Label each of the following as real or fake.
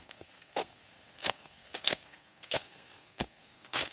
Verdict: fake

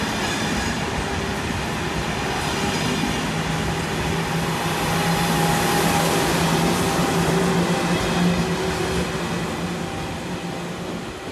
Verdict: real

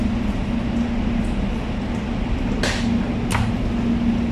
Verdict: real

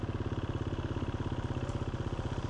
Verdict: real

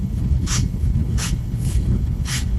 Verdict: fake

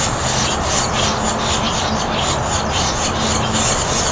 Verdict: real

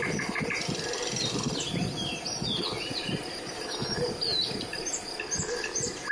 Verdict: real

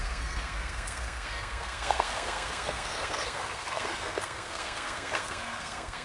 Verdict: fake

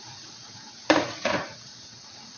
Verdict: fake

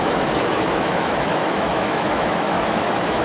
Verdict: fake